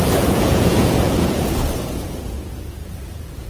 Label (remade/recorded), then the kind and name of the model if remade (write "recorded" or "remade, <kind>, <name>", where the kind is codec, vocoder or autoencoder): remade, vocoder, Vocos